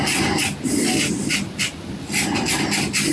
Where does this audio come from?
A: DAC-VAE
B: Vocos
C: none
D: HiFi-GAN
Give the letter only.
C